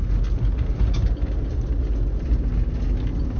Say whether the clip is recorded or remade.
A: recorded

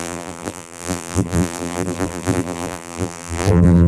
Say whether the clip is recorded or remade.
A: remade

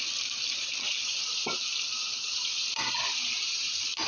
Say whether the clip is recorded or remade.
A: remade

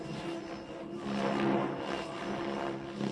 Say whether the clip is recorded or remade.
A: recorded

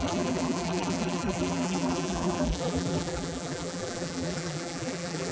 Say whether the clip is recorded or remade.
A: remade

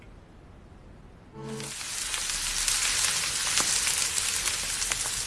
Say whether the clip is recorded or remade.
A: recorded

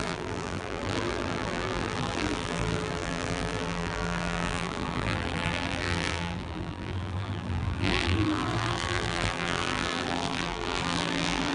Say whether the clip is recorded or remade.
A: remade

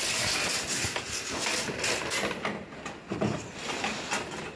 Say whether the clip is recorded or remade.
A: recorded